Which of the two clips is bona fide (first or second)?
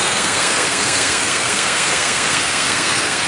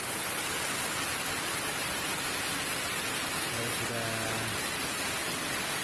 second